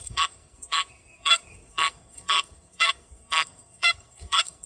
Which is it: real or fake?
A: fake